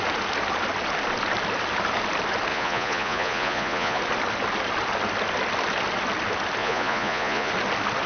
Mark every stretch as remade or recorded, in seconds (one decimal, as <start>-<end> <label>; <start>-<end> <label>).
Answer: 0.0-2.5 recorded; 2.5-4.0 remade; 4.0-6.6 recorded; 6.6-7.5 remade; 7.5-8.1 recorded